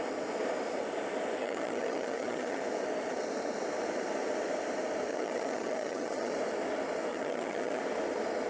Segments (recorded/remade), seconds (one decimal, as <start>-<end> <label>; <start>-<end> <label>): 0.0-1.4 recorded; 1.4-2.6 remade; 2.6-5.1 recorded; 5.1-6.3 remade; 6.3-7.1 recorded; 7.1-7.8 remade; 7.8-8.5 recorded